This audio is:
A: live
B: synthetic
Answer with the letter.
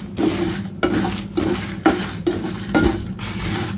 A